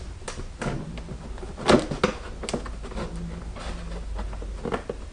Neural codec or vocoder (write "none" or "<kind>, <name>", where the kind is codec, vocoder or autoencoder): none